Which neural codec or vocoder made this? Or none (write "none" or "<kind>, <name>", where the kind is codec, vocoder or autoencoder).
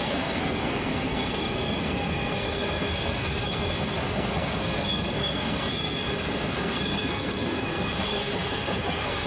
codec, SNAC